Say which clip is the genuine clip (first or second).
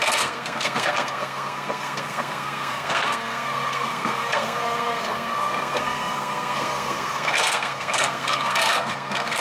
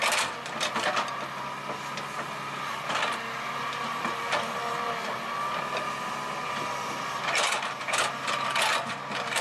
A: second